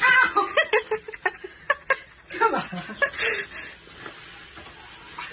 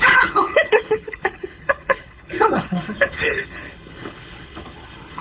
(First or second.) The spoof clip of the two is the second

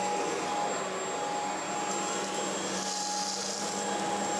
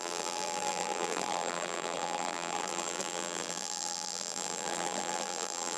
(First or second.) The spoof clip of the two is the second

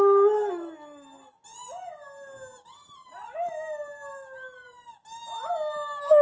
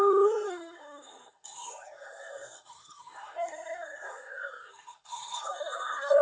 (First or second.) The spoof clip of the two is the second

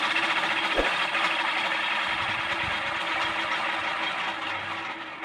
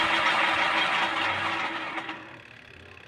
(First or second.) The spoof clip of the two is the first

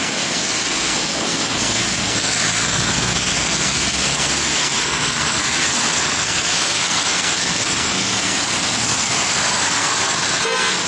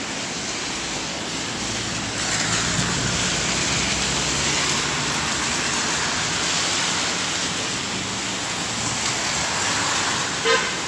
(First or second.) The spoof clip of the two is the first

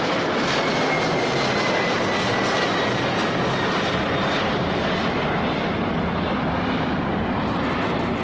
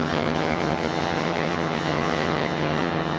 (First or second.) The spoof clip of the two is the second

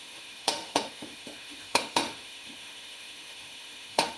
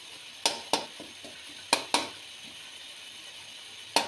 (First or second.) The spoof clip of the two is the first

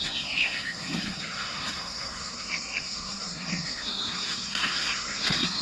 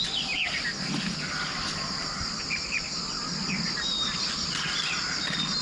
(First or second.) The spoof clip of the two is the first